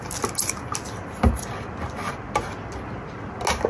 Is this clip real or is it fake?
real